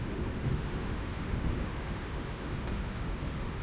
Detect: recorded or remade remade